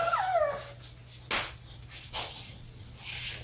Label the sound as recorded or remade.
recorded